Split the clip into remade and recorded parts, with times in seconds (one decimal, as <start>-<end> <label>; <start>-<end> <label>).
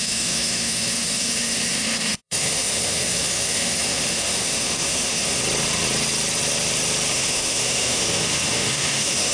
0.0-5.4 remade; 5.4-7.1 recorded; 7.1-9.3 remade